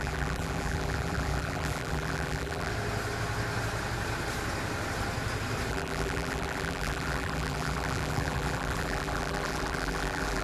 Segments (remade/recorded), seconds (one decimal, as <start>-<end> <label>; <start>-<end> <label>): 0.0-2.7 remade; 2.7-5.7 recorded; 5.7-10.4 remade